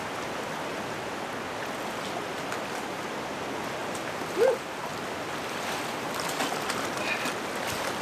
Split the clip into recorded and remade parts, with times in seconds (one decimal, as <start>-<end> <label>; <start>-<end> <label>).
0.0-3.8 recorded; 3.8-4.8 remade; 4.8-8.0 recorded